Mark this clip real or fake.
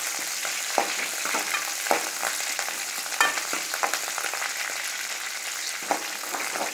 real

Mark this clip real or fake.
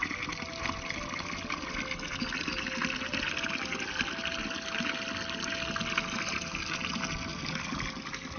real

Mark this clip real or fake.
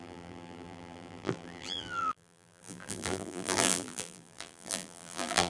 fake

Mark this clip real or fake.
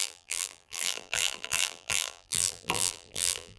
fake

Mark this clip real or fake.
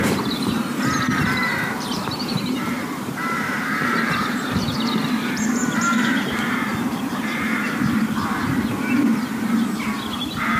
fake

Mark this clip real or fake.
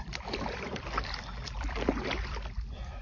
fake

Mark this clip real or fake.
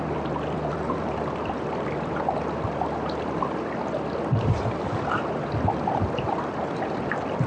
fake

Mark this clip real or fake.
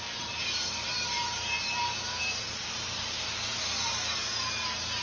fake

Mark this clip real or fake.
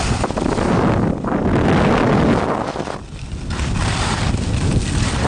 real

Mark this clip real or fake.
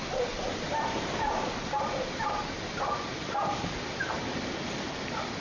real